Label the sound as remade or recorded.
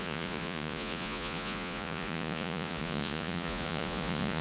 remade